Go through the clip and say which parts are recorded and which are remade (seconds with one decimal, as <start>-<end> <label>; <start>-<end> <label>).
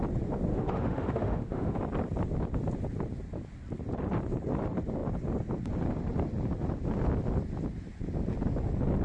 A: 0.0-0.5 recorded; 0.5-1.8 remade; 1.8-9.0 recorded